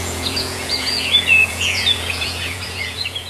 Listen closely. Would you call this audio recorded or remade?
remade